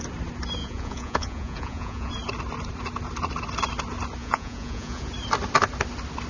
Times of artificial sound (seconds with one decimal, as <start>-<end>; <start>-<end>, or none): 0.6-2.1; 4.2-5.1